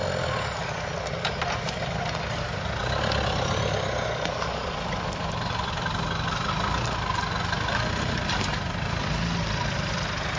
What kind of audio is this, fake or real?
real